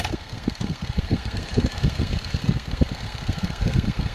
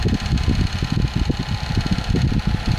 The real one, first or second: second